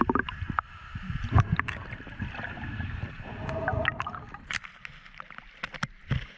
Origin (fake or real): real